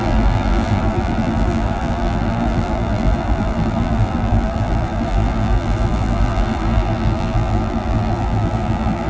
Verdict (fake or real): fake